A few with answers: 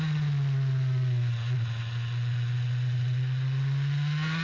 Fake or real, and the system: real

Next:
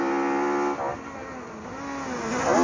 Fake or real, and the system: real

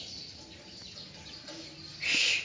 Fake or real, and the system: real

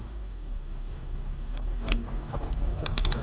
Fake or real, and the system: fake, codec, DAC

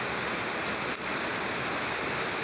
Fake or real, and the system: real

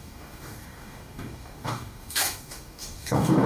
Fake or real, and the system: fake, codec, DAC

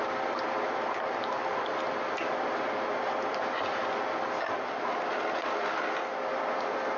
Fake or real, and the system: real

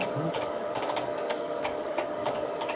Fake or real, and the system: fake, codec, DAC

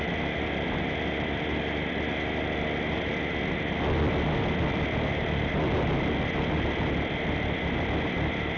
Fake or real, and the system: real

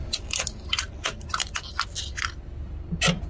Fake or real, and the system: real